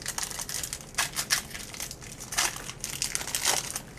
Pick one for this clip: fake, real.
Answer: real